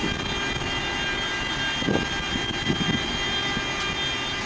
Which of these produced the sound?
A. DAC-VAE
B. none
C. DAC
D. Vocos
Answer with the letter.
B